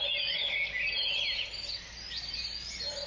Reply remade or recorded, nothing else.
recorded